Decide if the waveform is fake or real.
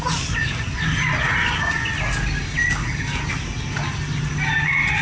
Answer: real